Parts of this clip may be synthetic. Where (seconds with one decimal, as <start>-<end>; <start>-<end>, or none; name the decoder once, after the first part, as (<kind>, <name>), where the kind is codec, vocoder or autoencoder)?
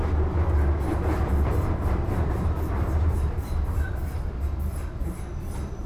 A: 0.9-2.7 (vocoder, BigVGAN v2)